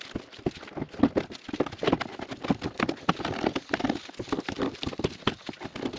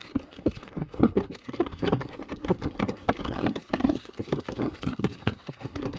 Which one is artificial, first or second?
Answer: second